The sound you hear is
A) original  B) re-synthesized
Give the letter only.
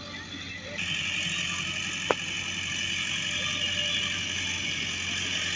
A